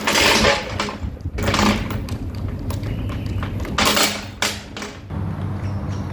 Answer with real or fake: real